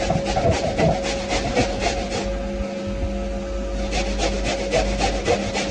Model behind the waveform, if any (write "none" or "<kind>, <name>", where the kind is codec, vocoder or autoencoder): none